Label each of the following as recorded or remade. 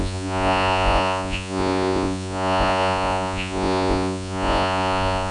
remade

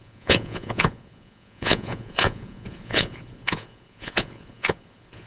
remade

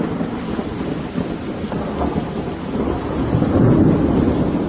recorded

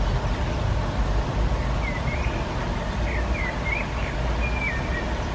recorded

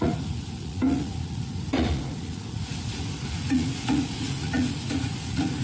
remade